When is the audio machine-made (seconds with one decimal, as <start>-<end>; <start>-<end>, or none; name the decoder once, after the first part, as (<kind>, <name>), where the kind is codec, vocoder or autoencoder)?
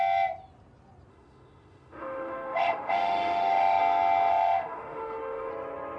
1.1-3.8 (autoencoder, DAC-VAE); 4.3-5.5